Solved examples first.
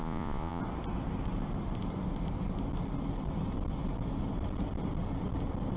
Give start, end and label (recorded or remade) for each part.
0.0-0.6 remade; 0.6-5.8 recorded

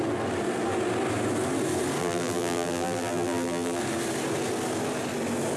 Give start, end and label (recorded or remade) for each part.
0.0-2.0 recorded; 2.0-3.8 remade; 3.8-5.6 recorded

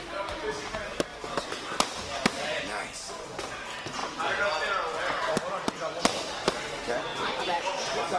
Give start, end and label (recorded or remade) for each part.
0.0-1.1 recorded; 1.1-1.7 remade; 1.7-7.1 recorded; 7.1-8.2 remade

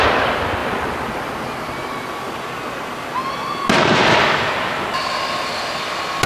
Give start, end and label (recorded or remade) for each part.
0.0-0.6 recorded; 0.6-2.4 remade; 2.4-6.3 recorded

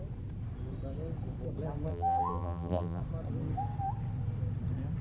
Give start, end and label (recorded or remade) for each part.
0.0-1.9 recorded; 1.9-3.0 remade; 3.0-5.0 recorded